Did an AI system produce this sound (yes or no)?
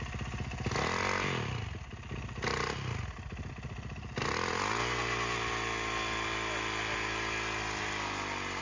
no